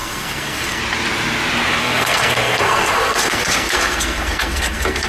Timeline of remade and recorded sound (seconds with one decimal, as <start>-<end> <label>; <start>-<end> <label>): 0.0-0.8 remade; 0.8-1.8 recorded; 1.8-5.1 remade